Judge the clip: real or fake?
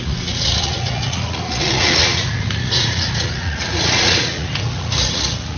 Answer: fake